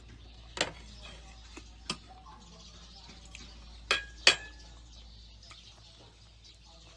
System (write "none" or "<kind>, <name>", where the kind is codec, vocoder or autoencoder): none